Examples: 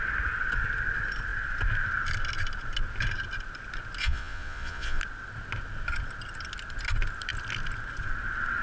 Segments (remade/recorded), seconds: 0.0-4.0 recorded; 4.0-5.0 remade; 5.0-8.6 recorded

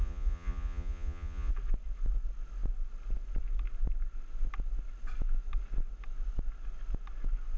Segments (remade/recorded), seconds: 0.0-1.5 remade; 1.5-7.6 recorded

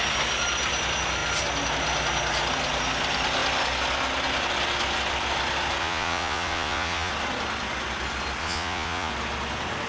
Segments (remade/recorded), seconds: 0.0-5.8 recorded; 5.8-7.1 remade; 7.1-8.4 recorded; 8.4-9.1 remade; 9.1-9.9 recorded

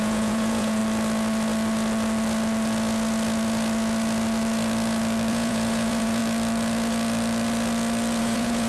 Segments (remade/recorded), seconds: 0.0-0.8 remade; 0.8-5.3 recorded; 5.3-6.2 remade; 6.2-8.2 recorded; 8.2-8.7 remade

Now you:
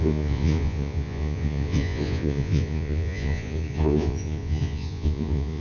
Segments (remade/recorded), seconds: 0.0-5.6 remade